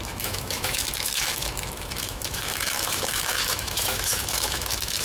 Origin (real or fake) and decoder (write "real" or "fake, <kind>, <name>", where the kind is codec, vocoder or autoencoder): fake, autoencoder, DAC-VAE